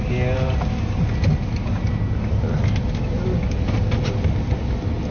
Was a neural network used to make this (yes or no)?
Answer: no